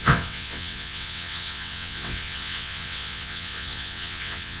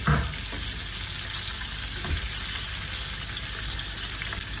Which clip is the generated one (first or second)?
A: first